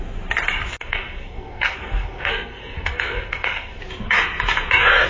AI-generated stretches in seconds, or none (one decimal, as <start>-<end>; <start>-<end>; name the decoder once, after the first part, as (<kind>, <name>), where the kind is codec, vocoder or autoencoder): 0.7-3.8 (codec, SNAC)